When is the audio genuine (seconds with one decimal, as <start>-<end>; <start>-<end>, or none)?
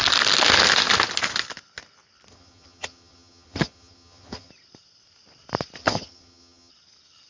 0.0-2.3; 4.5-5.8; 6.7-7.3